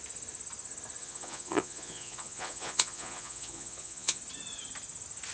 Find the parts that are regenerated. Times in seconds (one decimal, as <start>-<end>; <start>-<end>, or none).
1.0-4.2